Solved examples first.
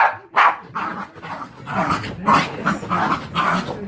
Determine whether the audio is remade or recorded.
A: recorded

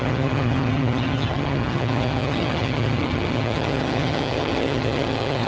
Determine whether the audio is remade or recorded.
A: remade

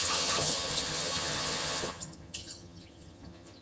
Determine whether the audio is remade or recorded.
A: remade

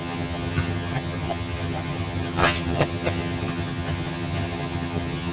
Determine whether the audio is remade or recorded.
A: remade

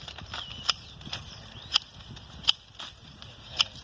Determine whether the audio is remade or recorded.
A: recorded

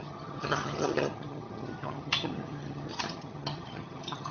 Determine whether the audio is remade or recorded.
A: remade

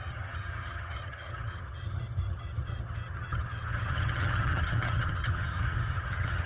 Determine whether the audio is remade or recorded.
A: remade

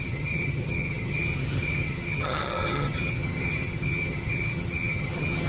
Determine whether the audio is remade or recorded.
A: remade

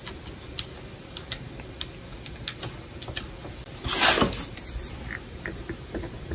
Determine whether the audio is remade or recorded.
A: recorded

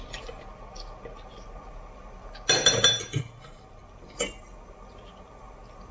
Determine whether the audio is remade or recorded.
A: recorded